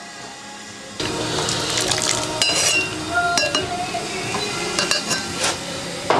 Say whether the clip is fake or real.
real